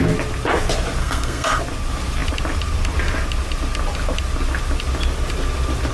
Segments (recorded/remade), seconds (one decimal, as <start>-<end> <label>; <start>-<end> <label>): 0.0-1.0 recorded; 1.0-1.6 remade; 1.6-5.9 recorded